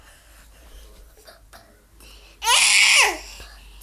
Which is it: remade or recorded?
recorded